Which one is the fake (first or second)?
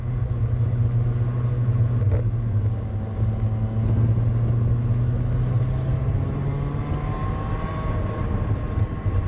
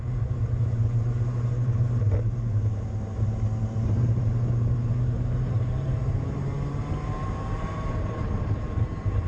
second